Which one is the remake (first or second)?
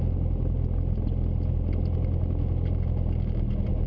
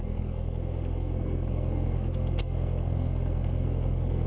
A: second